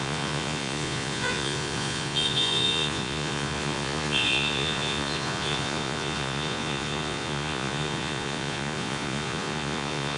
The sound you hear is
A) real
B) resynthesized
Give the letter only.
B